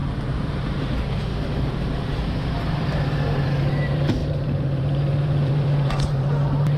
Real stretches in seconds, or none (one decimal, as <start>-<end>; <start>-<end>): none